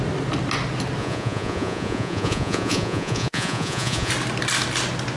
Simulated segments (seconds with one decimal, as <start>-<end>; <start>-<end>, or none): 1.0-4.1